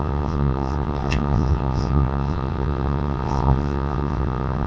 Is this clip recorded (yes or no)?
no